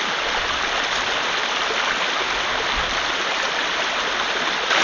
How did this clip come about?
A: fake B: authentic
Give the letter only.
B